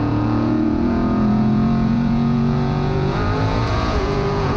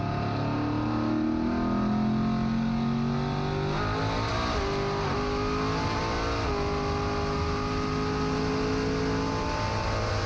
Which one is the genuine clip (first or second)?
second